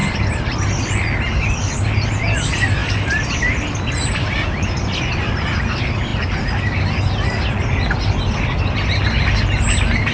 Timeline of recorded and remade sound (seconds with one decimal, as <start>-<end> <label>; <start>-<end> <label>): 0.0-6.1 recorded; 6.1-6.6 remade; 6.6-10.1 recorded